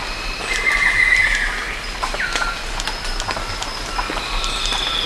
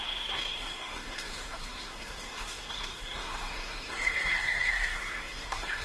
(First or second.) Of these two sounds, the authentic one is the first